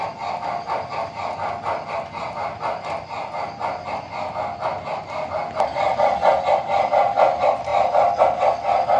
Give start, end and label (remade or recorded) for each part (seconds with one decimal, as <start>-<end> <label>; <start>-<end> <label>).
0.0-9.0 recorded